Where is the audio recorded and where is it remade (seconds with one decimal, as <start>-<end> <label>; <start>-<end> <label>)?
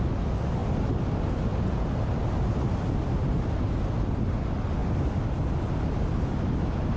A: 0.0-7.0 recorded